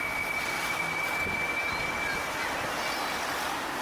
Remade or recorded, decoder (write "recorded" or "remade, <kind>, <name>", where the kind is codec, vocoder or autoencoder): recorded